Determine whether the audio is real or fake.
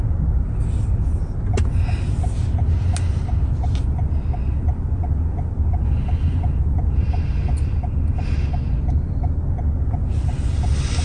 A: real